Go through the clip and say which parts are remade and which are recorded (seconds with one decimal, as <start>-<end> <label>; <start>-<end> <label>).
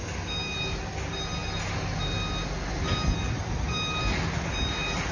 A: 0.0-5.1 recorded